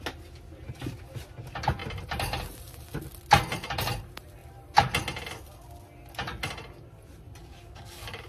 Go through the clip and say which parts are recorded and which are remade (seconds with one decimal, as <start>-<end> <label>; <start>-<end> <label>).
0.0-7.4 recorded; 7.4-8.3 remade